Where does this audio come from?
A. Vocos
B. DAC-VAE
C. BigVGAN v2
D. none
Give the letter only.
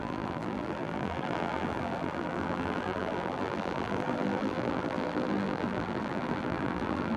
C